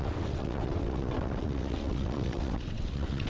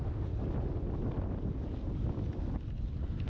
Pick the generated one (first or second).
first